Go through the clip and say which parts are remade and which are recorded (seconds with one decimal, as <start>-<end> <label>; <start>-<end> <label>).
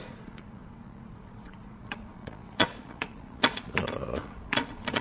0.0-5.0 remade